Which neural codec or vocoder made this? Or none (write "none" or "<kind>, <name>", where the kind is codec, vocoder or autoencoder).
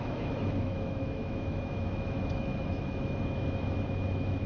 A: autoencoder, DAC-VAE